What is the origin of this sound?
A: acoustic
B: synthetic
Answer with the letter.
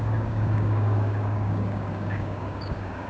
B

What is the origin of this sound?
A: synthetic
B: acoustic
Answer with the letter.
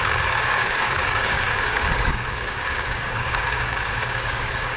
A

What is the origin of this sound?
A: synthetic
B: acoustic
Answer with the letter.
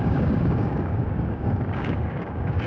A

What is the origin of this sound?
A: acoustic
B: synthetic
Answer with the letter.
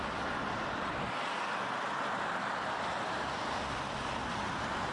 A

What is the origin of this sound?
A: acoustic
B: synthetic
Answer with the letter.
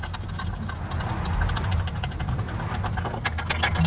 A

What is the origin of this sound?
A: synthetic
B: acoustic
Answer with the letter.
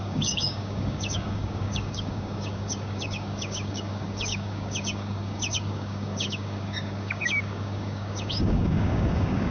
A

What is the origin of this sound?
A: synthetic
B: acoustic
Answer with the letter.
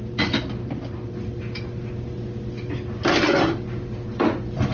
B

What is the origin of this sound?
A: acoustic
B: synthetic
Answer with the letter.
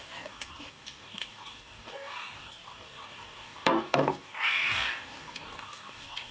B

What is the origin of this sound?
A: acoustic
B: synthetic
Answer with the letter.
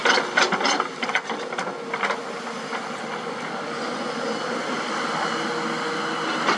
A